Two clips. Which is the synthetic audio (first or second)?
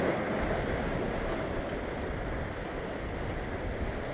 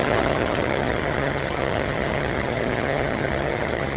second